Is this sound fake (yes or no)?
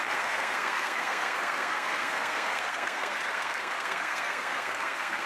yes